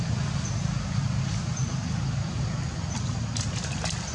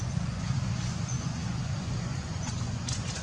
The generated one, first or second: second